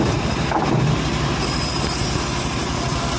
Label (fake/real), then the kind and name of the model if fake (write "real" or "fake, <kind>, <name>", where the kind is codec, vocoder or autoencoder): real